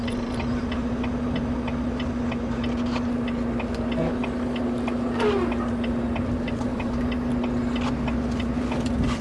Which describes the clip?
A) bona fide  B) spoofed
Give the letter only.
A